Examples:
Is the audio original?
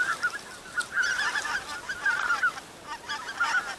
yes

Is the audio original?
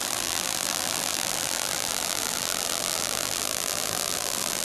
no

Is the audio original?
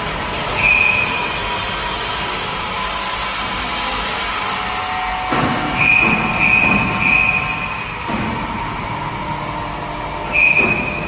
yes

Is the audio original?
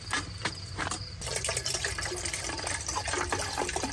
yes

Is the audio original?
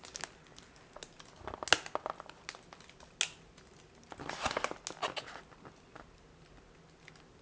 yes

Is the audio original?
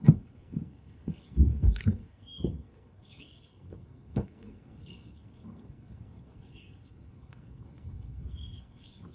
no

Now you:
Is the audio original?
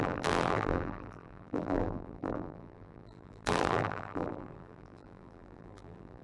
no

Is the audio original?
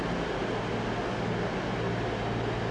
yes